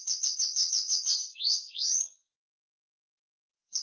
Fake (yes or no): yes